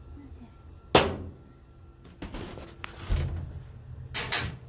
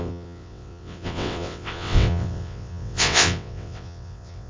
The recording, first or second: first